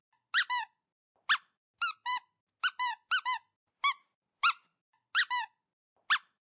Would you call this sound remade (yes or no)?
no